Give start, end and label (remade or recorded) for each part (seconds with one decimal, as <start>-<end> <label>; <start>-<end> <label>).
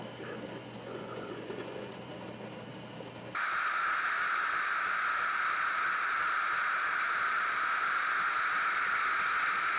0.0-0.6 recorded; 0.6-2.1 remade; 2.1-9.8 recorded